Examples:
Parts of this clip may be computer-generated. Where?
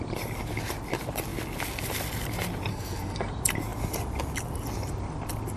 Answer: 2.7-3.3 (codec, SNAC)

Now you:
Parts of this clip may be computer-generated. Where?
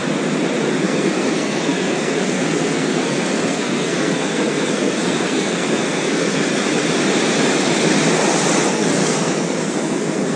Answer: 0.8-6.5 (codec, SNAC); 8.7-10.4